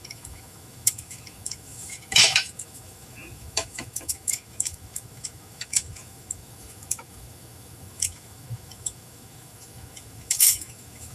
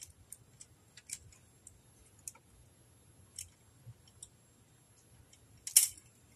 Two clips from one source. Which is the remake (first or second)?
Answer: first